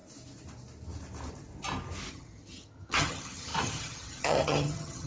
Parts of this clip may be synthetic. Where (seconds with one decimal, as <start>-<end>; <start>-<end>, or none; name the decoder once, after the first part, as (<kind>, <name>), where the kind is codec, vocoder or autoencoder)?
2.1-5.1 (vocoder, HiFi-GAN)